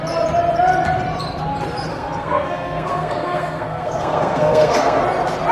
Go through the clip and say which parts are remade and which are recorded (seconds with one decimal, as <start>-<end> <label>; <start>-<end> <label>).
0.0-1.9 recorded; 1.9-5.0 remade; 5.0-5.5 recorded